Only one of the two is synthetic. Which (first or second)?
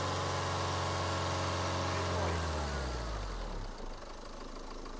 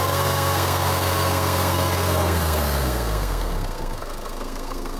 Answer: second